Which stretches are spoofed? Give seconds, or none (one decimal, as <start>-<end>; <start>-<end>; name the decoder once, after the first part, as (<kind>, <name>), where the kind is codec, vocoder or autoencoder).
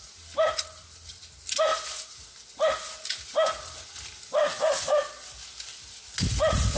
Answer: none